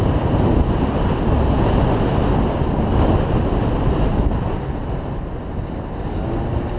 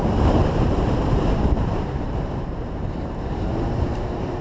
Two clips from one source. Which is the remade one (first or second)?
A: second